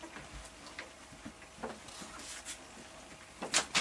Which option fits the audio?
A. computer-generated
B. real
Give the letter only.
B